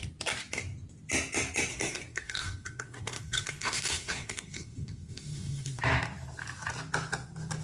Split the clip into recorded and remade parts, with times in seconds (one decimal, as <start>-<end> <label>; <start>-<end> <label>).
0.0-1.7 recorded; 1.7-5.8 remade; 5.8-7.6 recorded